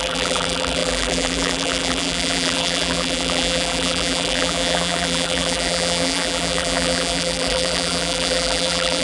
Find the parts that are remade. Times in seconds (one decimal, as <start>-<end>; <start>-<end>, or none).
0.0-9.0